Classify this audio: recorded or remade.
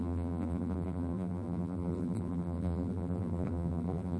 remade